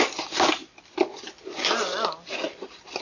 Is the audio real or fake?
real